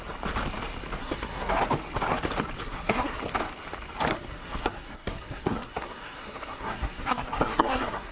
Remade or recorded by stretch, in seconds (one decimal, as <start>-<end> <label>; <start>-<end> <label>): 0.0-1.0 recorded; 1.0-1.6 remade; 1.6-2.6 recorded; 2.6-3.2 remade; 3.2-4.1 recorded; 4.1-8.1 remade